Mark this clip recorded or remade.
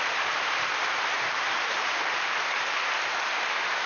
remade